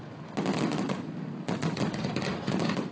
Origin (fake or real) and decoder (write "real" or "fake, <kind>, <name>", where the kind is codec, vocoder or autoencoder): real